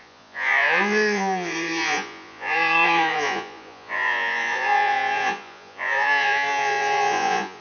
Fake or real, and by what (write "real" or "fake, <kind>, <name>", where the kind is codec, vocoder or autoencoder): fake, vocoder, Vocos